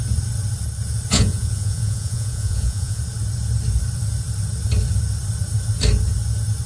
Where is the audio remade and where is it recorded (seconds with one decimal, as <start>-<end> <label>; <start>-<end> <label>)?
0.0-1.1 recorded; 1.1-3.0 remade; 3.0-6.7 recorded

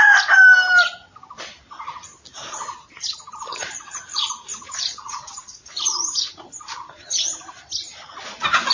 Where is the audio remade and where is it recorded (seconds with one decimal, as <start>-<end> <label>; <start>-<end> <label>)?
0.0-3.5 recorded; 3.5-7.2 remade; 7.2-8.7 recorded

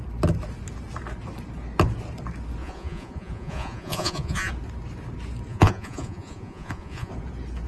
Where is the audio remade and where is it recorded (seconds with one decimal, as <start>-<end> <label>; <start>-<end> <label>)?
0.0-2.6 recorded; 2.6-4.5 remade; 4.5-5.5 recorded; 5.5-7.1 remade; 7.1-7.7 recorded

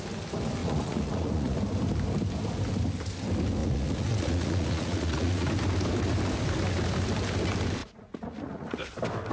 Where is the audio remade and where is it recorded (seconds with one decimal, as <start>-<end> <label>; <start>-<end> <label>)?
0.0-0.6 recorded; 0.6-1.6 remade; 1.6-3.6 recorded; 3.6-5.5 remade; 5.5-7.8 recorded; 7.8-8.9 remade; 8.9-9.3 recorded

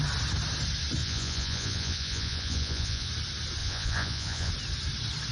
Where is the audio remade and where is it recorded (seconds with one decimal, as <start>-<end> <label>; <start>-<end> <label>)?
0.0-1.0 recorded; 1.0-3.1 remade; 3.1-3.6 recorded; 3.6-4.5 remade; 4.5-5.3 recorded

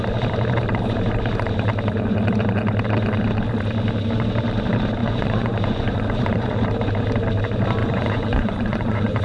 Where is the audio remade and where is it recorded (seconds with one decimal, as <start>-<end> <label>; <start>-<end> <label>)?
0.0-5.0 recorded; 5.0-6.6 remade; 6.6-7.8 recorded; 7.8-9.2 remade

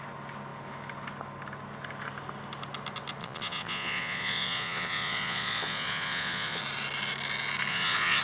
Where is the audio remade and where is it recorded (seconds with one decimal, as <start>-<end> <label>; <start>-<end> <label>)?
0.0-3.2 recorded; 3.2-6.6 remade; 6.6-7.7 recorded; 7.7-8.2 remade